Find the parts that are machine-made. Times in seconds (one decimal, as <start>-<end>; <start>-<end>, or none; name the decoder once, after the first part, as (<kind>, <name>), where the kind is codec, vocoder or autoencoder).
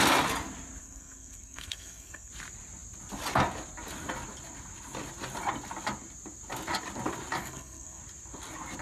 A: 0.8-2.3 (codec, SNAC); 7.4-8.0